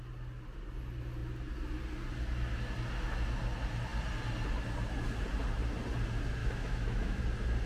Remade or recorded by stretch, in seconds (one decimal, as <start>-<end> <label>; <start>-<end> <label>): 0.0-6.4 recorded; 6.4-7.2 remade; 7.2-7.7 recorded